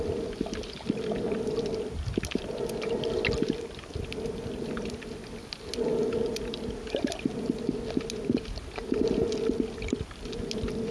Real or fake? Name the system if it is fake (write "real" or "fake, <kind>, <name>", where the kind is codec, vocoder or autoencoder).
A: real